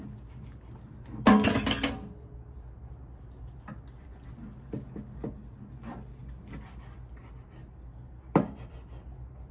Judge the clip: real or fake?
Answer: real